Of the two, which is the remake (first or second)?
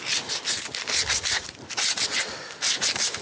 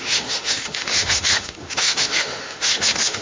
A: second